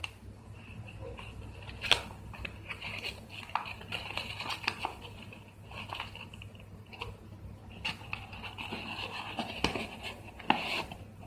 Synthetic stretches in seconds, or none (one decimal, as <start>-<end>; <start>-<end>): none